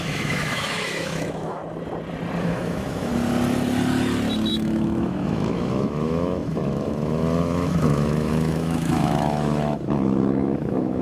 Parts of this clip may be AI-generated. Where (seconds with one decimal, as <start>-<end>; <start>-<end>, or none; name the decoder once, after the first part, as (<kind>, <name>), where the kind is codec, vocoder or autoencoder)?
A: 0.0-1.6 (autoencoder, DAC-VAE); 2.4-3.1; 4.5-11.0